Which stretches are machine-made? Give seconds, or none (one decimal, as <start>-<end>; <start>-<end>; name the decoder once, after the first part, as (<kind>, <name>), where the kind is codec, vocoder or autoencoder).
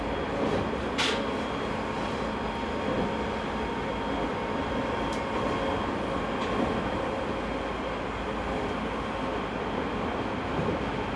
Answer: none